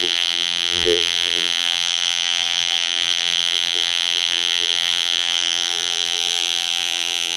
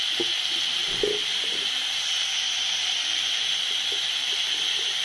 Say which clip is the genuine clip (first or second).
second